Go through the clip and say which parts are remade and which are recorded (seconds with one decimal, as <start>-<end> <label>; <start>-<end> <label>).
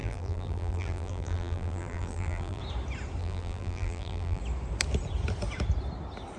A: 0.0-2.6 remade; 2.6-3.2 recorded; 3.2-4.4 remade; 4.4-6.4 recorded